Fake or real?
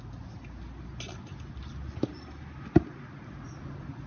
real